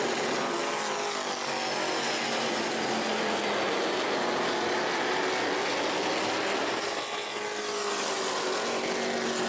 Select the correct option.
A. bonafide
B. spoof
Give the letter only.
A